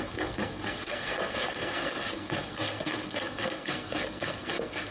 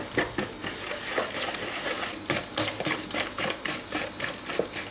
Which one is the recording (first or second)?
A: second